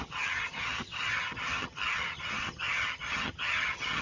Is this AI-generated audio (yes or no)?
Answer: yes